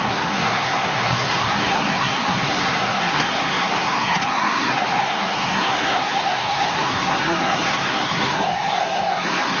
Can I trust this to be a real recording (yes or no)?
no